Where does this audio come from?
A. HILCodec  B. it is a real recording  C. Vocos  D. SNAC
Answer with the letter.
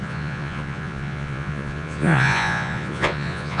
C